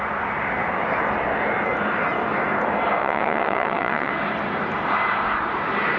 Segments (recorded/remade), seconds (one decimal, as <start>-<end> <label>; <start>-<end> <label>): 0.0-3.0 recorded; 3.0-4.1 remade; 4.1-6.0 recorded